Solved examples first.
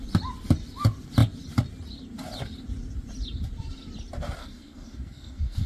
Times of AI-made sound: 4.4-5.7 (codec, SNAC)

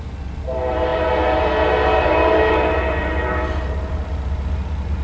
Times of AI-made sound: none

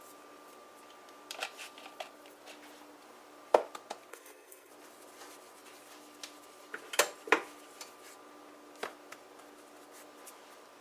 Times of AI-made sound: 4.1-4.7 (codec, SNAC)

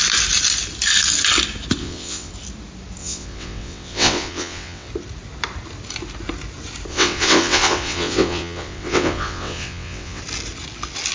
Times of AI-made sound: 1.8-2.3 (vocoder, WaveNeXt); 3.0-4.9; 6.9-10.2